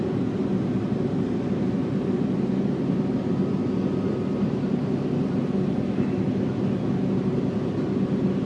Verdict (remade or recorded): recorded